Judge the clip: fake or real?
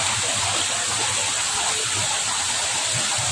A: real